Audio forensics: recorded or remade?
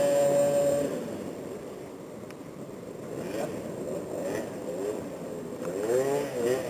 remade